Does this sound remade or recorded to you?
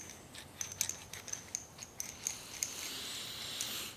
recorded